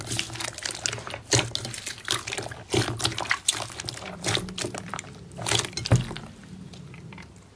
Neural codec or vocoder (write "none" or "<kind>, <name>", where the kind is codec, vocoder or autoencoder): none